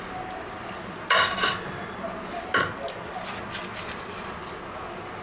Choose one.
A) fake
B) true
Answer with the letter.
B